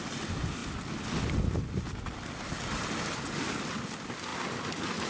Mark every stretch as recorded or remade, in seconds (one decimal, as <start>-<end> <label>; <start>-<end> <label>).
0.0-5.1 recorded